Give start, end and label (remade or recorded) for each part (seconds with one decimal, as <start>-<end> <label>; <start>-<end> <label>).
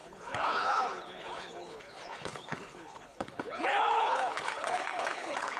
0.0-5.6 remade